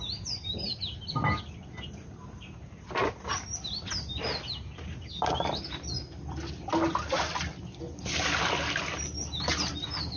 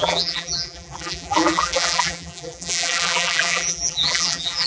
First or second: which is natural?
first